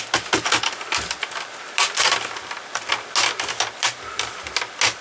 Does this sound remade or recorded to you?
recorded